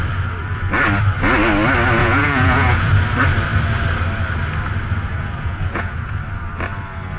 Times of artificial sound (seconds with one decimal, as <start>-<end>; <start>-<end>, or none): 2.0-2.9; 5.1-6.1